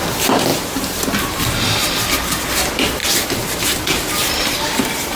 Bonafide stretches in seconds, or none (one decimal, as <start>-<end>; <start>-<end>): 3.0-4.4